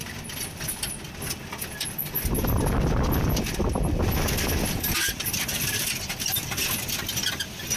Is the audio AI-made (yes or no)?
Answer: no